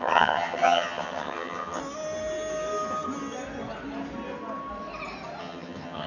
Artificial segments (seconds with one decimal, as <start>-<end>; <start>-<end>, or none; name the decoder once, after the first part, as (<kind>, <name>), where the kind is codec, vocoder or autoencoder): 0.0-1.8 (vocoder, HiFi-GAN); 5.4-6.1